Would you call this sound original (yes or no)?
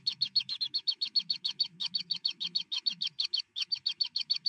no